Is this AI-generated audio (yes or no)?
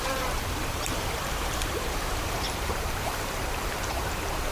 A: yes